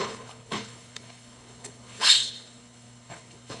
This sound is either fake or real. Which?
fake